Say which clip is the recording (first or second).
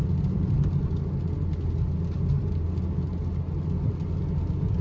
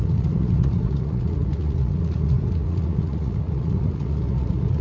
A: first